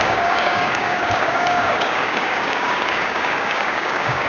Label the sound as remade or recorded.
remade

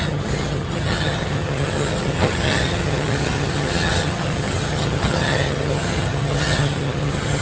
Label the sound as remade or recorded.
remade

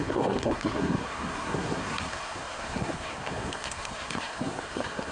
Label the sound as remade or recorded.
remade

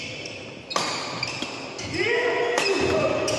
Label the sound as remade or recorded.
recorded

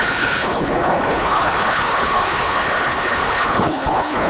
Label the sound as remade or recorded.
remade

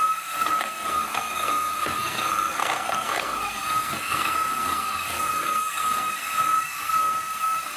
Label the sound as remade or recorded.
remade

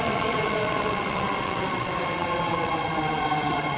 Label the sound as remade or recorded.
remade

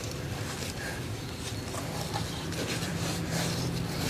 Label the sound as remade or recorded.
remade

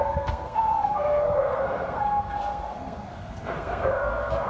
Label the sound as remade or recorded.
remade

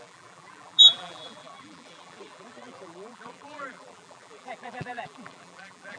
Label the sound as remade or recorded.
remade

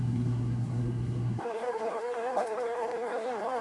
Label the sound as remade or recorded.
remade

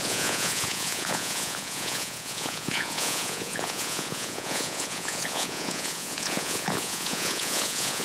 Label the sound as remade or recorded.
remade